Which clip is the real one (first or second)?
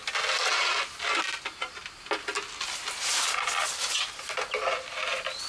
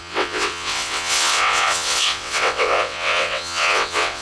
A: first